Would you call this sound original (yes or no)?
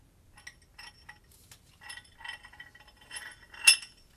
yes